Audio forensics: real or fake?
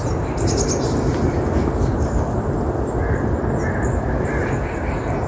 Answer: real